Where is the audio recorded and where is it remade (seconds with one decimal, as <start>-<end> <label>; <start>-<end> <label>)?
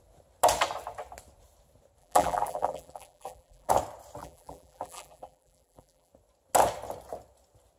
0.0-2.0 recorded; 2.0-3.7 remade; 3.7-4.2 recorded; 4.2-6.1 remade; 6.1-7.8 recorded